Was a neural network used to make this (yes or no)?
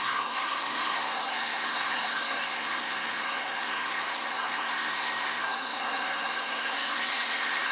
yes